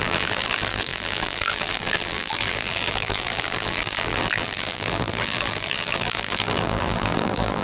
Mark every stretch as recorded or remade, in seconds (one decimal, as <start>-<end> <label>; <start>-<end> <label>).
0.0-7.6 remade